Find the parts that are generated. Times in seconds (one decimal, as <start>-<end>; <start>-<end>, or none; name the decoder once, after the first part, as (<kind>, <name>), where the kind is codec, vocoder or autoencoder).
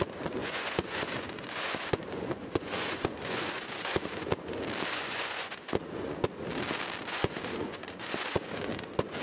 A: 0.0-4.3 (vocoder, Vocos); 4.9-6.3; 7.0-9.2